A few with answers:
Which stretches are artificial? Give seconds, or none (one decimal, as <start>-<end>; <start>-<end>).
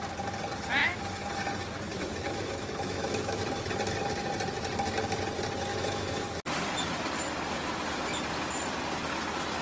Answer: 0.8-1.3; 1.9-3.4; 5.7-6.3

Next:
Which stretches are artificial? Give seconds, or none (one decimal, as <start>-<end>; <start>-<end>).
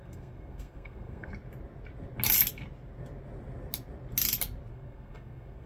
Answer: 0.0-1.3; 4.7-5.7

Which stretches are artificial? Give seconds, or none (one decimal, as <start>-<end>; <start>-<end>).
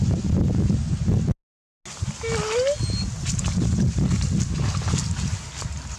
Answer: none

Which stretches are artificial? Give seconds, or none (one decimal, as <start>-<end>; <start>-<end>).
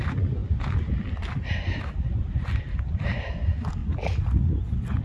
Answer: none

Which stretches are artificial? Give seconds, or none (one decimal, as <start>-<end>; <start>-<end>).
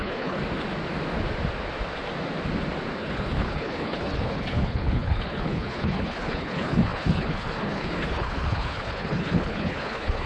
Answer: 0.0-0.4; 3.0-10.3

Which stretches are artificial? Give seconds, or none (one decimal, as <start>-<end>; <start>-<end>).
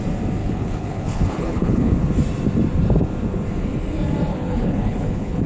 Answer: 0.4-1.9; 4.3-5.5